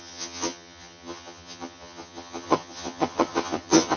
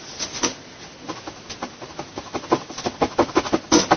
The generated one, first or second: first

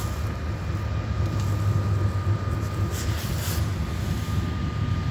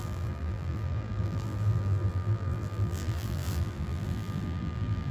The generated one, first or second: second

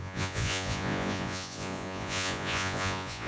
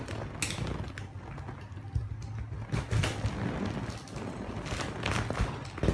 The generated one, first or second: first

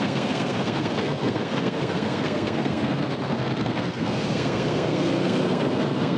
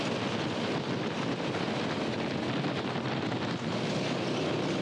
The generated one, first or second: first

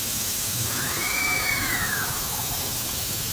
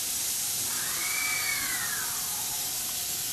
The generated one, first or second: first